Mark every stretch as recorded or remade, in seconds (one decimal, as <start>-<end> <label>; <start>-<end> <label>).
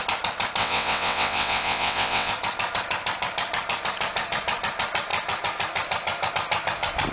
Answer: 0.0-0.6 recorded; 0.6-2.3 remade; 2.3-7.1 recorded